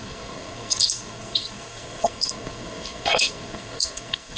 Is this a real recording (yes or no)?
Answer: no